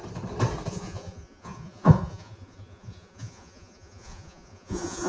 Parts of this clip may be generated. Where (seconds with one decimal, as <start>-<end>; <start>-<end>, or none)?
0.7-5.1